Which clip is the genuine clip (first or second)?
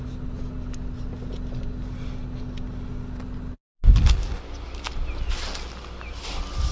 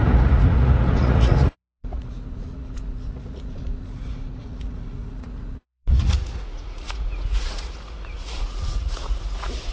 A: first